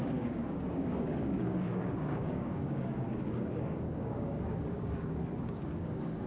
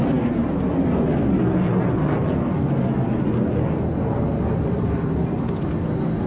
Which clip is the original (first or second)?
second